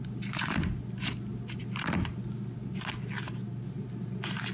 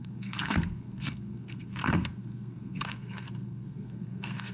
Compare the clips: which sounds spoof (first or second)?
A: second